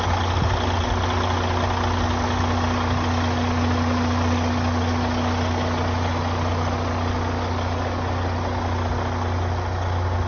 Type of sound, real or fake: real